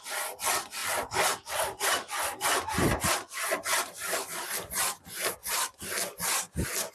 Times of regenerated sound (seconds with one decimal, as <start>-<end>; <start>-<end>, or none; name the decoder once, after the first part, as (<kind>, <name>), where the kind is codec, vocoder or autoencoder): 0.8-4.4 (vocoder, BigVGAN v2); 5.4-6.9